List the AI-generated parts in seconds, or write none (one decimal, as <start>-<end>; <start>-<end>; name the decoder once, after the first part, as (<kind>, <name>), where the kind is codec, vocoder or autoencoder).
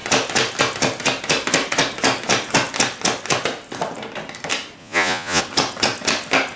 4.8-5.4 (vocoder, Vocos)